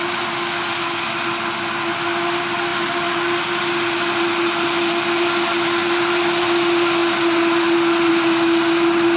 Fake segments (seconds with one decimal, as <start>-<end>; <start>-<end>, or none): none